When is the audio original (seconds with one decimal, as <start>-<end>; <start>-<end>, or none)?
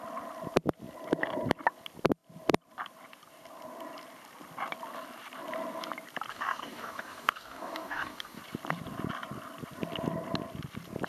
0.0-6.3; 8.4-11.1